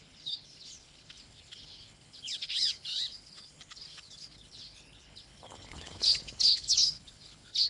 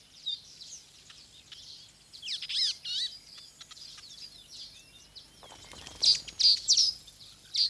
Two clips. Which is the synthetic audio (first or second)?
first